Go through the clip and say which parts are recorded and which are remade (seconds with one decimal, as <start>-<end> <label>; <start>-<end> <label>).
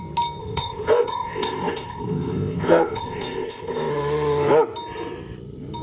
0.0-0.4 recorded; 0.4-3.9 remade; 3.9-5.8 recorded